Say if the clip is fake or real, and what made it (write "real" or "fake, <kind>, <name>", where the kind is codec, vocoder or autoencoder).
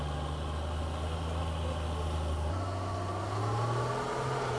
real